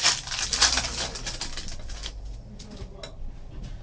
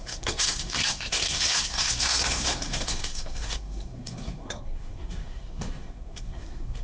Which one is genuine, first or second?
first